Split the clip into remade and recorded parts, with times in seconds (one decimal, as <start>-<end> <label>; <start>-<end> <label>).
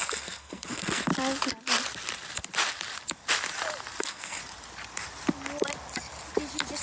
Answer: 0.0-1.1 remade; 1.1-4.0 recorded; 4.0-4.4 remade; 4.4-6.8 recorded